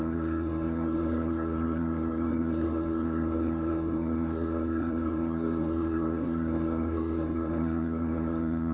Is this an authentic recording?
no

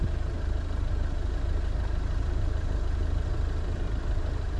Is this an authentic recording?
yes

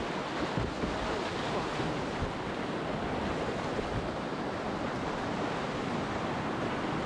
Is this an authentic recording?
yes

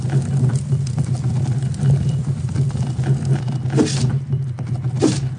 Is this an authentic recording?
yes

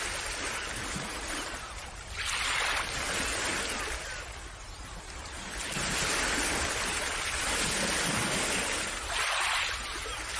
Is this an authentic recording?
yes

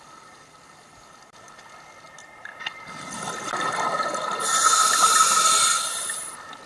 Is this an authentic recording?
yes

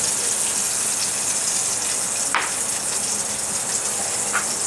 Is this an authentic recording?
yes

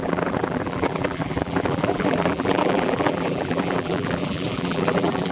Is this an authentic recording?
no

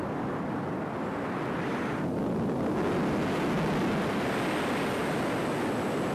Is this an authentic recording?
yes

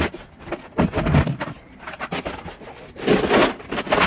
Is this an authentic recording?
yes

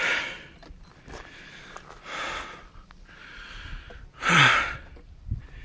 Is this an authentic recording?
yes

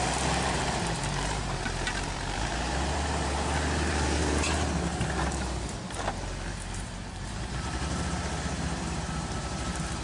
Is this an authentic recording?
no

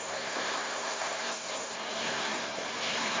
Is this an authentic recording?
no